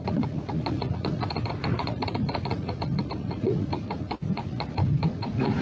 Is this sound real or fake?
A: fake